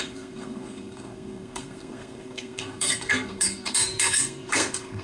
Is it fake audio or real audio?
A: fake